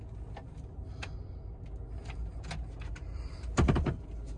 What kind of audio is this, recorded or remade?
recorded